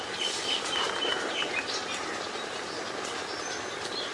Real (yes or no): yes